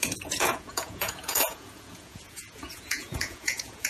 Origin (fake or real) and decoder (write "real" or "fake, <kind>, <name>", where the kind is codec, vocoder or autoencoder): fake, vocoder, Vocos